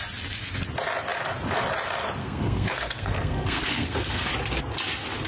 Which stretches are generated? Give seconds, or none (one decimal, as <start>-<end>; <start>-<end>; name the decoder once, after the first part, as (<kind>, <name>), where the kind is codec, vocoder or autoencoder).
2.2-4.3 (codec, SNAC)